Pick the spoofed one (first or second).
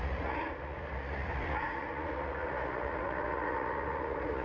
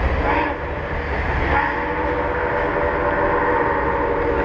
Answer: first